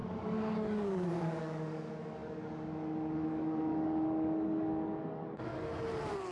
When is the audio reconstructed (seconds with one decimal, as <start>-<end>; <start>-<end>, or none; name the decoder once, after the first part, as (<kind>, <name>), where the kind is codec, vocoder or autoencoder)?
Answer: 0.0-5.5 (codec, DAC)